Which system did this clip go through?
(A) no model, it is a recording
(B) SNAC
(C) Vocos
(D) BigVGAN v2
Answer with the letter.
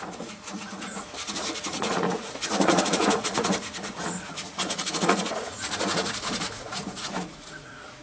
C